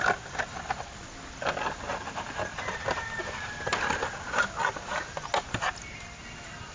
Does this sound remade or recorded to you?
recorded